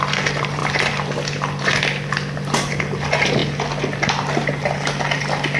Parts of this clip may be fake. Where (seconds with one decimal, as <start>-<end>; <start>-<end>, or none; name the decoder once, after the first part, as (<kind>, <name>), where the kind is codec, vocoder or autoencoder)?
none